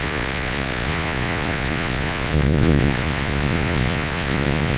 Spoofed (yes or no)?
yes